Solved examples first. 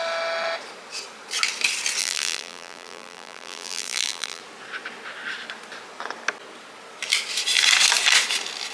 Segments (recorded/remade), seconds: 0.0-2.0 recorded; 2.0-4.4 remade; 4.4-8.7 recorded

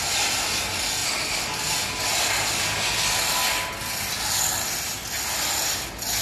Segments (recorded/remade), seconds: 0.0-6.2 recorded

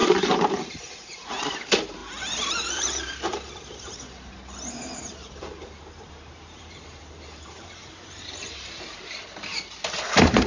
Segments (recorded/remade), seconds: 0.0-10.5 remade

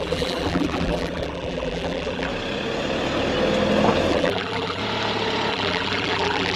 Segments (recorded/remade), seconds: 0.0-2.3 remade; 2.3-4.1 recorded; 4.1-4.8 remade; 4.8-5.5 recorded; 5.5-6.6 remade

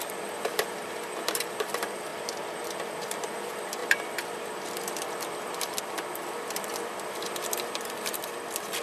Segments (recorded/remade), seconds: 0.0-2.1 remade; 2.1-3.0 recorded; 3.0-8.8 remade

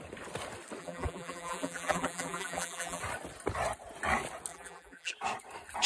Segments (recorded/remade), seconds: 0.0-0.8 recorded; 0.8-3.0 remade; 3.0-4.5 recorded; 4.5-5.1 remade; 5.1-5.9 recorded

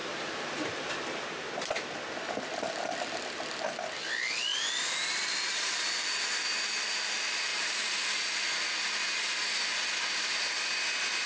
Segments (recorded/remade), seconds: 0.0-0.9 remade; 0.9-7.5 recorded; 7.5-8.1 remade; 8.1-11.3 recorded